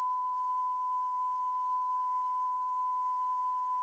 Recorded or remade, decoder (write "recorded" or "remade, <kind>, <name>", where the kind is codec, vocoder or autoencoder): remade, codec, SNAC